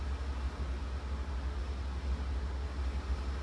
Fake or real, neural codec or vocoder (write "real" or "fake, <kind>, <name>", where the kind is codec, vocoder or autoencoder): real